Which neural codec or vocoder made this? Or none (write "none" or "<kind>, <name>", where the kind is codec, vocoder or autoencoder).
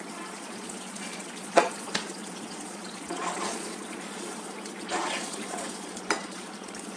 vocoder, Vocos